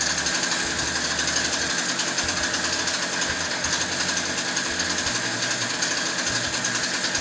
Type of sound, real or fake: real